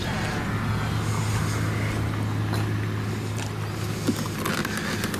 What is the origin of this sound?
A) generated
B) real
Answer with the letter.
B